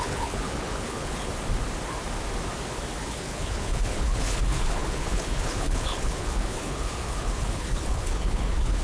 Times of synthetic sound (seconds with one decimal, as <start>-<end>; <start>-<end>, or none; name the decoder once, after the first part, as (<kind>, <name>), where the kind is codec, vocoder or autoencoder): 0.0-1.3 (codec, HILCodec); 3.0-8.8